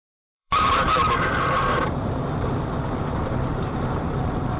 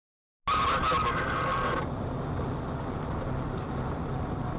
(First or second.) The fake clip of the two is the first